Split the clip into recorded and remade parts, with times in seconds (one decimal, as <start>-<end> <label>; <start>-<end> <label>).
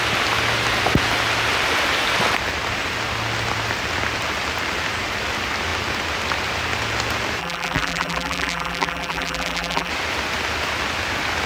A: 0.0-7.4 recorded; 7.4-9.9 remade; 9.9-11.5 recorded